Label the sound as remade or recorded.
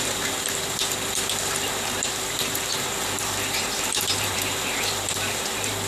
remade